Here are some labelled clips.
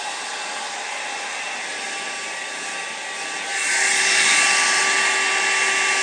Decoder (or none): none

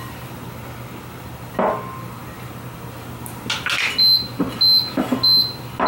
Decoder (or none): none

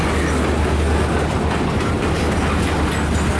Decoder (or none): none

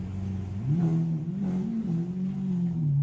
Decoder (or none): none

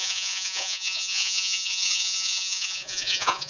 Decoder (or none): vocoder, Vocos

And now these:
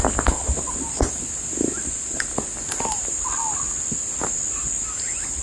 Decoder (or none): none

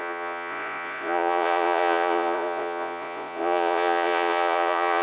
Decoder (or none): vocoder, Vocos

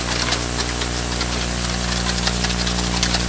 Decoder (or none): none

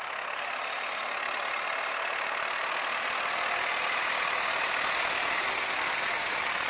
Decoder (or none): none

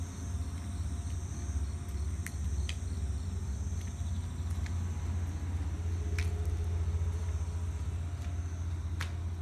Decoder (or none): none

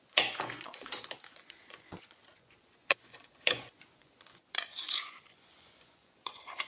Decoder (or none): vocoder, Vocos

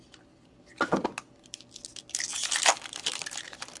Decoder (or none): none